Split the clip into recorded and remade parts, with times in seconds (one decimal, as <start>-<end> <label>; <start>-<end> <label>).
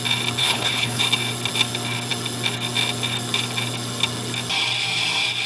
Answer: 0.0-0.4 recorded; 0.4-1.0 remade; 1.0-5.5 recorded